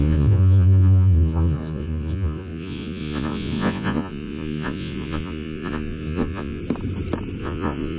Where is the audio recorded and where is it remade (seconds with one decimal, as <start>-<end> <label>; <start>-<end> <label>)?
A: 0.0-6.6 remade; 6.6-7.4 recorded; 7.4-8.0 remade